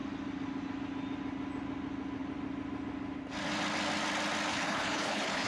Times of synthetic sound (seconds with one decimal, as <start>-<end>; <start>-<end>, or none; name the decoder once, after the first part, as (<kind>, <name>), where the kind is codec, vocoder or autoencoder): 4.5-5.5 (codec, HILCodec)